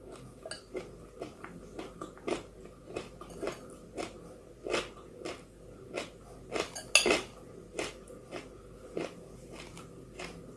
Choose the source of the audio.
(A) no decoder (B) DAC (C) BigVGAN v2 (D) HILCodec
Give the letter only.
A